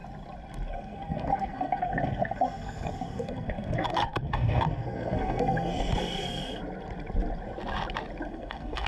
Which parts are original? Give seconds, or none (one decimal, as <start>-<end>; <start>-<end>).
0.0-0.7; 6.6-8.3